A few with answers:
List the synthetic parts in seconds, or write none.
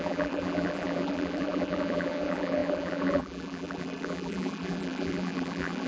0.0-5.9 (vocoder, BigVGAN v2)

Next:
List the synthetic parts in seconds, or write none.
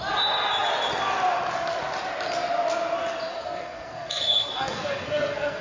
3.3-5.6 (codec, SNAC)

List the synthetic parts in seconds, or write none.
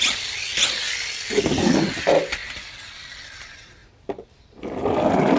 3.8-4.4 (vocoder, BigVGAN v2)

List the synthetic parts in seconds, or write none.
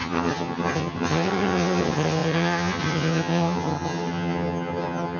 0.0-5.2 (vocoder, HiFi-GAN)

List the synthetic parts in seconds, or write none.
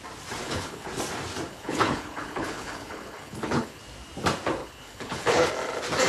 0.4-0.9 (codec, HILCodec); 1.5-3.8; 4.6-5.5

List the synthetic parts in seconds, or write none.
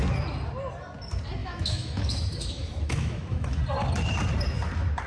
1.4-3.6 (autoencoder, DAC-VAE)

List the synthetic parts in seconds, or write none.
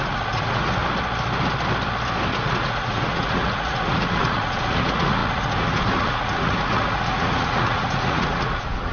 0.0-0.8 (vocoder, Vocos); 2.3-8.9